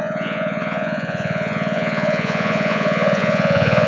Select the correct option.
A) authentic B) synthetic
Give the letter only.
B